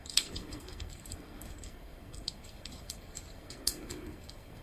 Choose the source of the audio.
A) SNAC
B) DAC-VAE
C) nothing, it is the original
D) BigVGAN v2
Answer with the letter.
A